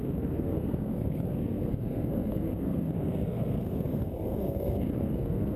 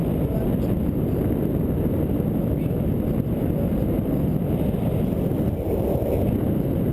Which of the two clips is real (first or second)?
second